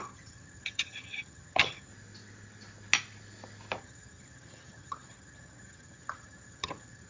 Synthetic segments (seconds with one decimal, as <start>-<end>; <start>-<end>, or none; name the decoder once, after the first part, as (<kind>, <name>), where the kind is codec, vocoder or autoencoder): 0.0-1.9 (vocoder, HiFi-GAN); 3.8-7.1

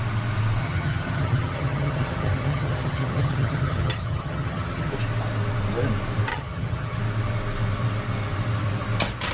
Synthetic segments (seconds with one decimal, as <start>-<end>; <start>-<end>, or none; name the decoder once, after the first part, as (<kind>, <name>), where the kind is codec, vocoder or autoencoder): 0.6-4.9 (vocoder, HiFi-GAN); 6.3-7.0